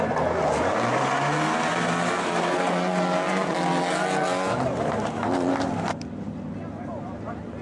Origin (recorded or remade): recorded